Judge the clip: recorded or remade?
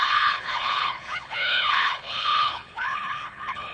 remade